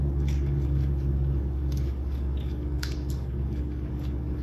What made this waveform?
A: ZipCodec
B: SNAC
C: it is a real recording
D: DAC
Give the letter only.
D